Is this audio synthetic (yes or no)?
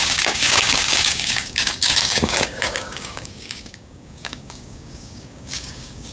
yes